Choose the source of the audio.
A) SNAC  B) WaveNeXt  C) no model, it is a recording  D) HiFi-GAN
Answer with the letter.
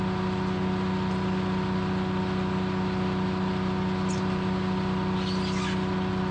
C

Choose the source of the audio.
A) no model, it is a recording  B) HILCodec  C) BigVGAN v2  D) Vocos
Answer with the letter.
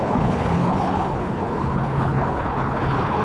B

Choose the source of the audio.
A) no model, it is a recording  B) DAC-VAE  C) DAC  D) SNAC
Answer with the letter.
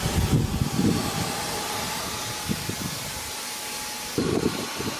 A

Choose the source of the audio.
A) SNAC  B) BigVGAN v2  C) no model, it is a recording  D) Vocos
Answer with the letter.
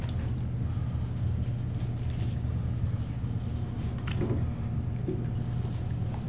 C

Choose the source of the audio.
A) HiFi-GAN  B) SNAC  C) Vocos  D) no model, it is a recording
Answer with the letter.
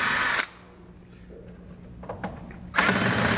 D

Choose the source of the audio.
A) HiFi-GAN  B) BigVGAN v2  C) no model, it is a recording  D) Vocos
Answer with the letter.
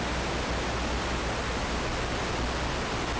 C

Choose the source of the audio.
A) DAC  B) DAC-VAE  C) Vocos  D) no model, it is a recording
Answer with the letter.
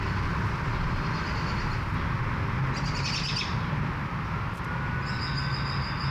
D